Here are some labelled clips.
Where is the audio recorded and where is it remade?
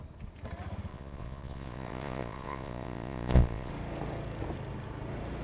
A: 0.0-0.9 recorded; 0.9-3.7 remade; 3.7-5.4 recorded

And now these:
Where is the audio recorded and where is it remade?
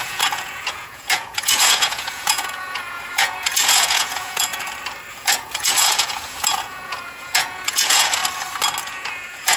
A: 0.0-4.5 remade; 4.5-5.1 recorded; 5.1-8.2 remade; 8.2-8.8 recorded; 8.8-9.6 remade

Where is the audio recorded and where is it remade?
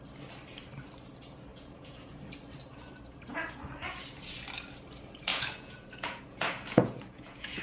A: 0.0-1.5 recorded; 1.5-2.2 remade; 2.2-5.3 recorded; 5.3-7.6 remade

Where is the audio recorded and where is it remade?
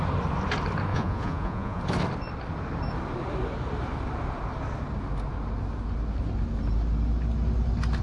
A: 0.0-0.9 recorded; 0.9-1.8 remade; 1.8-8.0 recorded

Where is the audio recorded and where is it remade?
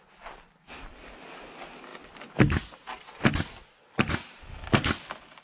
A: 0.0-5.4 recorded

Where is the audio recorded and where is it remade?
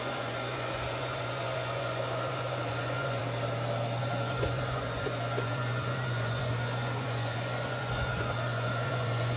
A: 0.0-3.2 remade; 3.2-4.0 recorded; 4.0-9.4 remade